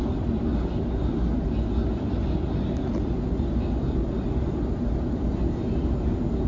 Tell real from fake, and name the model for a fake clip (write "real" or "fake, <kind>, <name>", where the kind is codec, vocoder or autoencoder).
real